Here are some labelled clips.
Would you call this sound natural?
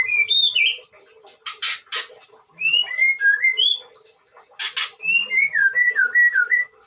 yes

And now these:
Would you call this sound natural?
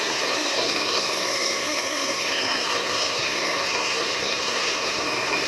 no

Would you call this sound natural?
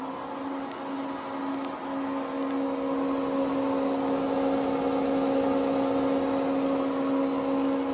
yes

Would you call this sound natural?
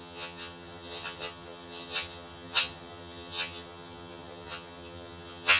no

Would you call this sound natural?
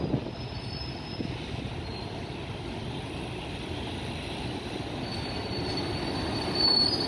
no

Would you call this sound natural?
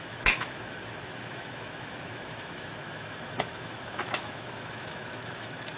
no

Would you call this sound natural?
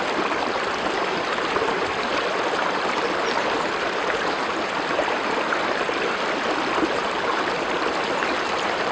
yes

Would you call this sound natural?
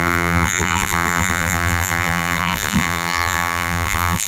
no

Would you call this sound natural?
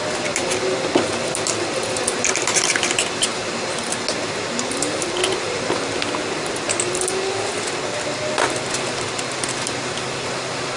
yes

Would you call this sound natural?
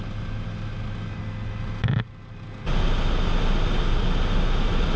yes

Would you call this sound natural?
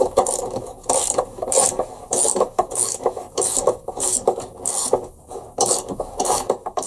no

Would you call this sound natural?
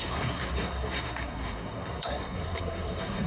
no